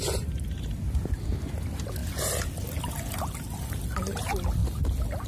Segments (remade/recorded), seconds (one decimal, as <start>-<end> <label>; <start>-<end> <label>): 0.0-5.3 recorded

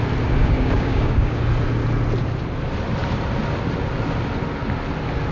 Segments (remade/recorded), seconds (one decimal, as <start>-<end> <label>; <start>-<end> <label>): 0.0-0.4 recorded; 0.4-1.4 remade; 1.4-5.3 recorded